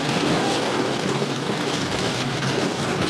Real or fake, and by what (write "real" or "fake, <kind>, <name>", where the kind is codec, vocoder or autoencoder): fake, codec, DAC